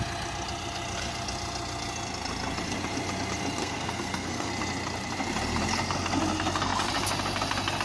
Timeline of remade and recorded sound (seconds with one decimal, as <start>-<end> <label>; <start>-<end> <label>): 0.0-3.6 recorded; 3.6-4.5 remade; 4.5-7.8 recorded

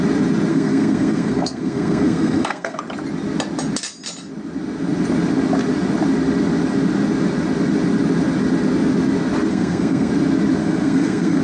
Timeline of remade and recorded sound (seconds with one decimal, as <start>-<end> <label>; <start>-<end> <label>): 0.0-0.5 recorded; 0.5-2.8 remade; 2.8-9.5 recorded; 9.5-10.1 remade; 10.1-10.6 recorded; 10.6-11.4 remade

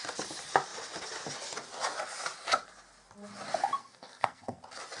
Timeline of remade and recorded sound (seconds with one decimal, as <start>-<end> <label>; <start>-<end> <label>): 0.0-3.8 recorded; 3.8-4.6 remade; 4.6-5.0 recorded

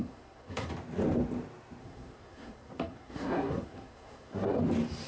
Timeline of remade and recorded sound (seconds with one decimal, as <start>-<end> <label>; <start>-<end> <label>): 0.0-0.7 remade; 0.7-1.8 recorded; 1.8-4.6 remade; 4.6-5.1 recorded

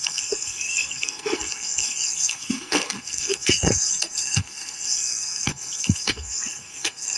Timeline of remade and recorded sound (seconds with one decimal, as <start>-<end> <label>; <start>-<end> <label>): 0.0-7.2 remade